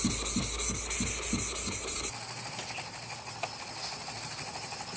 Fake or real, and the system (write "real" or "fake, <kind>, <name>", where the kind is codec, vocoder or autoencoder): real